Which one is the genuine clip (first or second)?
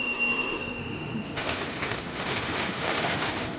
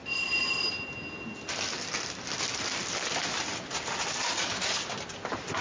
second